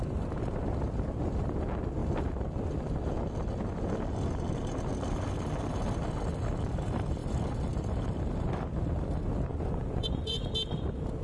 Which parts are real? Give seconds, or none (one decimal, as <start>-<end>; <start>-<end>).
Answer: 0.0-9.5; 10.4-11.2